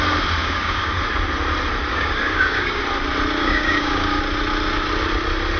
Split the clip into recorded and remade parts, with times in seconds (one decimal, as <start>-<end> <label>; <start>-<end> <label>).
0.0-0.4 recorded; 0.4-1.0 remade; 1.0-1.9 recorded; 1.9-2.8 remade; 2.8-3.4 recorded; 3.4-4.2 remade; 4.2-5.6 recorded